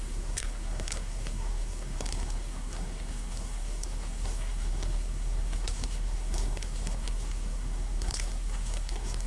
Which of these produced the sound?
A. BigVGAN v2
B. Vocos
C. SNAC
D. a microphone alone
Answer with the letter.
C